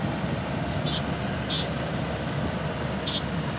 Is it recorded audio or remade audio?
recorded